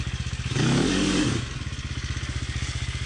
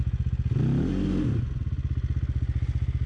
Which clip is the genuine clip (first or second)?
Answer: second